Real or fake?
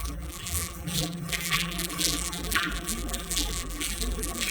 fake